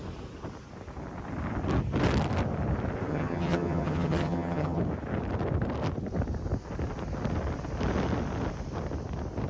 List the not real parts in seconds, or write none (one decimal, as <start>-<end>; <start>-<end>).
3.1-4.8